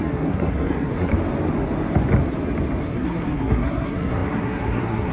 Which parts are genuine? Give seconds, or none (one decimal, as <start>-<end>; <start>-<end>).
1.1-2.8